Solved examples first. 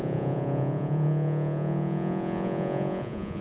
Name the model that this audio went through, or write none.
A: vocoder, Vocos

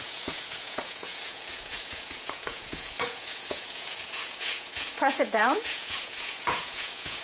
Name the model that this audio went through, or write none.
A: vocoder, Vocos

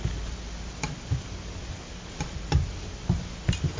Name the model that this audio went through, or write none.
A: none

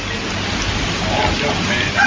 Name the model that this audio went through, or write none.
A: none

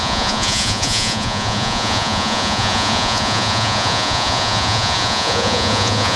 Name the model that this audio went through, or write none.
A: vocoder, Vocos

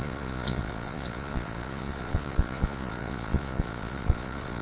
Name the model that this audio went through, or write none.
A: vocoder, Vocos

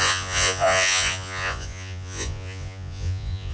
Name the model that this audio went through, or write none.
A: vocoder, Vocos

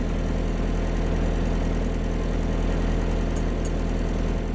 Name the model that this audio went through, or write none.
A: none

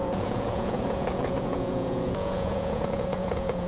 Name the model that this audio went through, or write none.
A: vocoder, Vocos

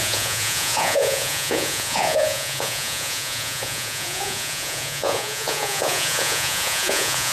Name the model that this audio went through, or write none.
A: vocoder, Vocos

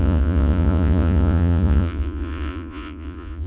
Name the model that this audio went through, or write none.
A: vocoder, Vocos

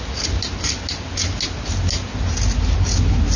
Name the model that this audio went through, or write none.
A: none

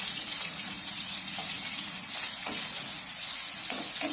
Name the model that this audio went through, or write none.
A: vocoder, Vocos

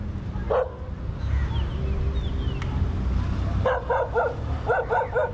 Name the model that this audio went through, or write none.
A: none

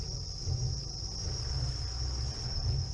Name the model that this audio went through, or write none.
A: none